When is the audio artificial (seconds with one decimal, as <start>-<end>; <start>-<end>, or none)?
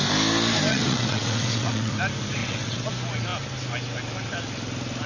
0.7-1.9; 2.4-2.9